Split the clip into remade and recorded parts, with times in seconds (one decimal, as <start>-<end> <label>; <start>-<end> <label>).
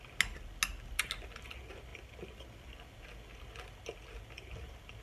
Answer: 0.0-5.0 recorded